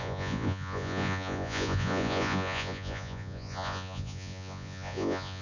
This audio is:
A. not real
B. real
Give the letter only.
A